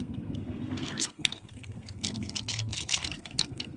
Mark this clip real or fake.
fake